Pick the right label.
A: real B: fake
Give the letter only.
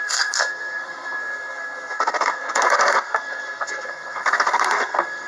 B